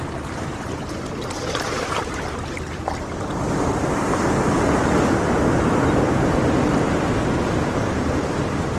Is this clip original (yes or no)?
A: no